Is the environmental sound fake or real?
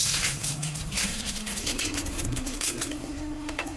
fake